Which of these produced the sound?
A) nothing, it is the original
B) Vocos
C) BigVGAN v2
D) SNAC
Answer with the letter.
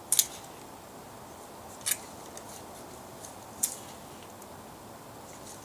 A